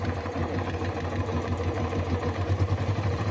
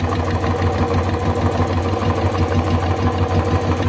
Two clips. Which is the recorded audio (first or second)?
second